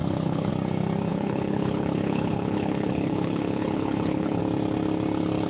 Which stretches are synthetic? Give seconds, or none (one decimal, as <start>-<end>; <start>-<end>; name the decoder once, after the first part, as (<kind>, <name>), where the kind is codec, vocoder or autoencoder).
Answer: 0.0-0.5 (codec, HILCodec); 1.1-4.4